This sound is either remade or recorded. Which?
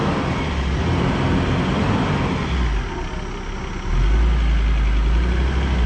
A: recorded